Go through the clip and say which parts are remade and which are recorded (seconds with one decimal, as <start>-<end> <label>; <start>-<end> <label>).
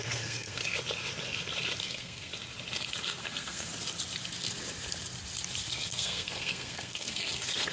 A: 0.0-0.6 remade; 0.6-1.8 recorded; 1.8-2.3 remade; 2.3-3.2 recorded; 3.2-3.7 remade; 3.7-5.7 recorded; 5.7-7.7 remade